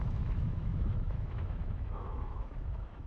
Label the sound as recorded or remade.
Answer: remade